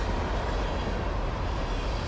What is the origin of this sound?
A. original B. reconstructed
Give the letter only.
A